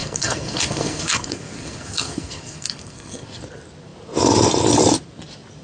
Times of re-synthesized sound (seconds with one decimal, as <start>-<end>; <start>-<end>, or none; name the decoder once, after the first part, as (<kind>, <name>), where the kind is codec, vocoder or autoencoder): 0.0-3.4 (codec, SNAC)

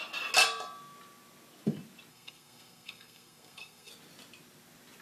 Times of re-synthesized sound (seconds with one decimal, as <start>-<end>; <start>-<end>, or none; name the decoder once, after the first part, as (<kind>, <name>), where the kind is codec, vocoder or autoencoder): 2.1-3.9 (codec, SNAC)

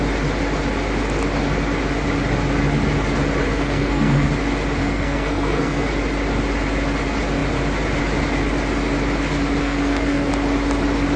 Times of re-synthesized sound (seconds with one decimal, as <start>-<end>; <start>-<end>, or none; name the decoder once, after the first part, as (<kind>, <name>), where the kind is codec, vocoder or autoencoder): 3.5-4.3 (codec, SNAC); 4.8-5.9; 9.6-10.3

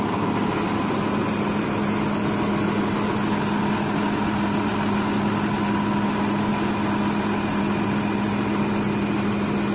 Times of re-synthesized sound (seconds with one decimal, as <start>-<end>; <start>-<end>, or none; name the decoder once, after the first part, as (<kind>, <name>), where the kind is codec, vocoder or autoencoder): none

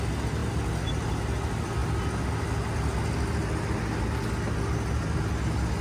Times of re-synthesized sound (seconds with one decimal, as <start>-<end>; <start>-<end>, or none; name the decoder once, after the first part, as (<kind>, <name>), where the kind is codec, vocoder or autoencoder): none